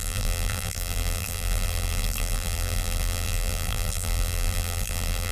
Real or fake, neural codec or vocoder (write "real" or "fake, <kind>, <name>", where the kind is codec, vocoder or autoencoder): fake, vocoder, BigVGAN v2